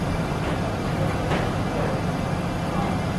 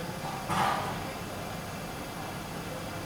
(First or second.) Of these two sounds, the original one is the second